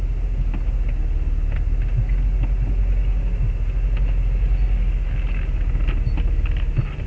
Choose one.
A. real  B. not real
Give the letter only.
A